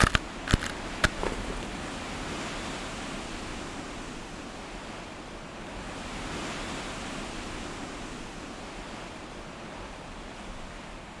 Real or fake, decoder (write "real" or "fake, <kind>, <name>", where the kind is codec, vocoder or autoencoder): real